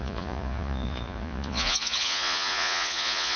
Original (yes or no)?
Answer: no